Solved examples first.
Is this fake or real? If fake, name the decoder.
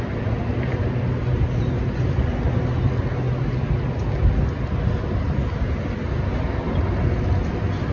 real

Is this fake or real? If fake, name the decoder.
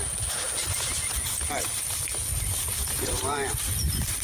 fake, vocoder, BigVGAN v2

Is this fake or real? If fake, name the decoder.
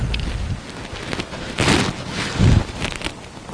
real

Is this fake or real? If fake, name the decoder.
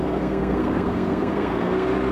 fake, codec, SNAC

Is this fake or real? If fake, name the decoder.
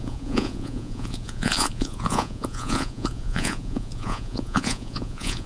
fake, vocoder, Vocos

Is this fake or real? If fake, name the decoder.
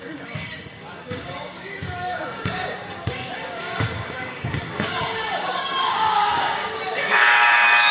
fake, codec, DAC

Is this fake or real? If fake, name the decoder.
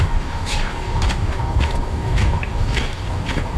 fake, codec, DAC